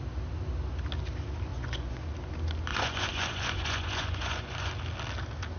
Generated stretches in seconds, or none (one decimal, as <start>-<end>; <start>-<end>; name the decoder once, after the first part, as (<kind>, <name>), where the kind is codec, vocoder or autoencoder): 1.5-2.1 (vocoder, Vocos); 2.7-4.7

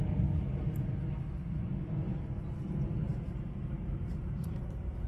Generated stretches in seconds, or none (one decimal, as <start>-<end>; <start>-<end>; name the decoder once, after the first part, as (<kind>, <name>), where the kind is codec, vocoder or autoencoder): 3.1-5.1 (vocoder, BigVGAN v2)